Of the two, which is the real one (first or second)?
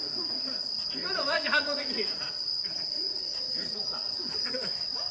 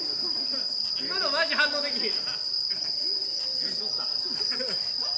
second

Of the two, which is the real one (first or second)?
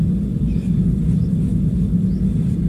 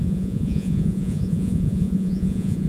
first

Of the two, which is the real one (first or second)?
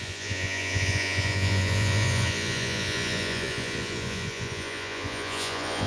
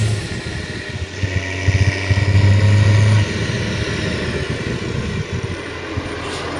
second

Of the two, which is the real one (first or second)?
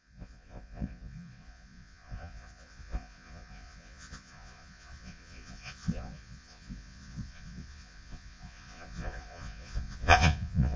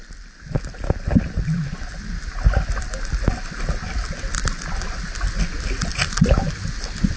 second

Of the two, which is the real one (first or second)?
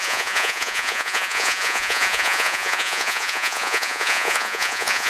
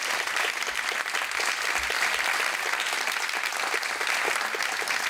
second